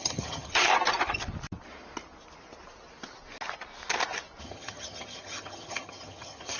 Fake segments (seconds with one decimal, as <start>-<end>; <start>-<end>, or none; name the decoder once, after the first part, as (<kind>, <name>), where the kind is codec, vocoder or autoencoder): 0.0-0.7 (vocoder, HiFi-GAN); 4.4-6.6